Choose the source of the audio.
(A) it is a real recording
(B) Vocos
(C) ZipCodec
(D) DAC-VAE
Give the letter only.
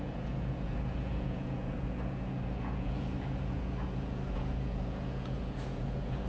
B